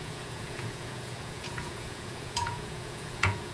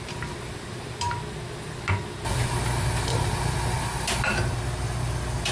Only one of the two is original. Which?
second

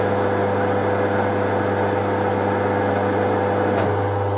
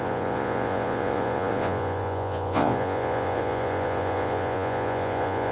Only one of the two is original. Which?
first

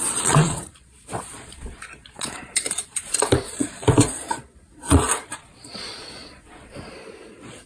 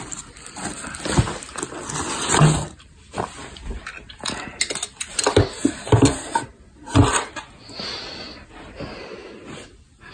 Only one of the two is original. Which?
second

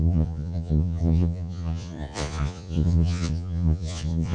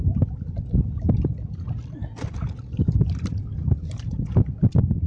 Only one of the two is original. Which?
second